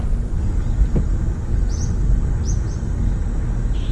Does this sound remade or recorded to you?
recorded